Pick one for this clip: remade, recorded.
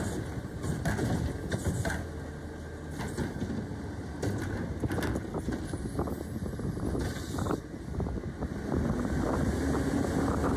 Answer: recorded